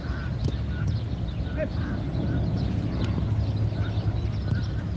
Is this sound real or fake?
real